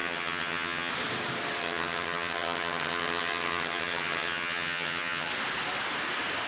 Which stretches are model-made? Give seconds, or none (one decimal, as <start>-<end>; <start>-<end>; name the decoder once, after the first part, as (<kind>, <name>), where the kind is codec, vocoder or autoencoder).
0.0-0.9 (vocoder, HiFi-GAN); 1.6-5.3